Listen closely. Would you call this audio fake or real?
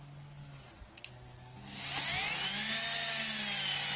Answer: real